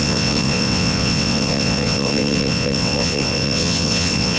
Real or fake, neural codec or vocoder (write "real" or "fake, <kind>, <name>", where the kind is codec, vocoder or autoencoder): fake, vocoder, WaveNeXt